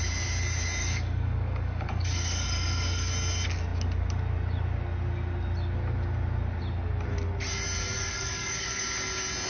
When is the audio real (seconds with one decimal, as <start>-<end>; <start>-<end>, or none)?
0.0-0.8; 3.1-7.9; 8.8-9.5